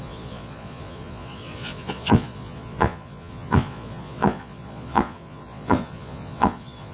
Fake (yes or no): yes